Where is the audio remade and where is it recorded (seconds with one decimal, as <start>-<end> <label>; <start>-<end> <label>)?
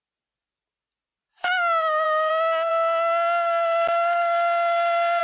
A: 0.0-1.1 recorded; 1.1-2.3 remade; 2.3-5.2 recorded